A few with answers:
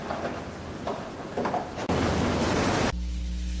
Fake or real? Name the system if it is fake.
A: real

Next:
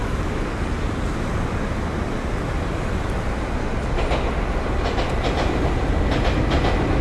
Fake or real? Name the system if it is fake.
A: real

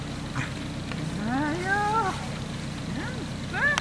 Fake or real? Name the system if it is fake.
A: real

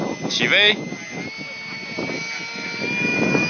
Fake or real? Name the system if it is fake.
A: real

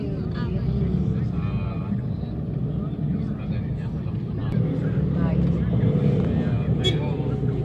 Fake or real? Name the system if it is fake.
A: real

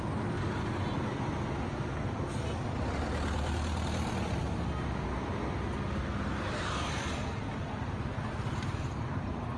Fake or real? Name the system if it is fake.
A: real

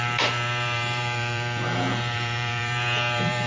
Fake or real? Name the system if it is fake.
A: fake, vocoder, BigVGAN v2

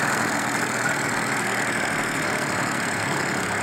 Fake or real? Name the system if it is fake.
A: fake, codec, SNAC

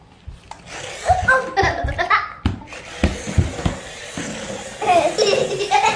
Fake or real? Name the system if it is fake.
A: real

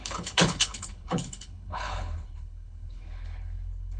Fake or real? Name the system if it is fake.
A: fake, codec, HILCodec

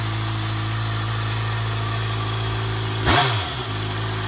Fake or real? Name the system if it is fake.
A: real